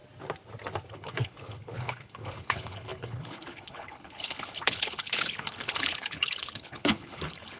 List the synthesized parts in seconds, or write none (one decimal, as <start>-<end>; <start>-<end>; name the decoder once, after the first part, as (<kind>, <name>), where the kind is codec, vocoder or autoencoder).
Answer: 0.9-7.6 (codec, HILCodec)